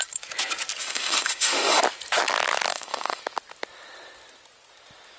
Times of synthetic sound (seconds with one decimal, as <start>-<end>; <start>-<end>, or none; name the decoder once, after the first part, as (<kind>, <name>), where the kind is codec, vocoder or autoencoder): 0.8-1.8 (autoencoder, DAC-VAE); 2.7-3.2